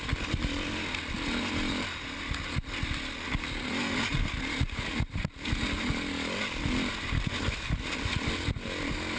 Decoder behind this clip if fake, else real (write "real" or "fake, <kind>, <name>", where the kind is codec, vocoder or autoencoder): real